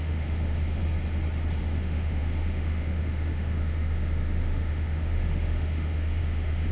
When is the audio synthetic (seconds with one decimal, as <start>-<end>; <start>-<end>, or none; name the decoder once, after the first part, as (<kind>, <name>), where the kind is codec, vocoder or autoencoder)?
0.0-0.8 (autoencoder, DAC-VAE); 1.6-6.7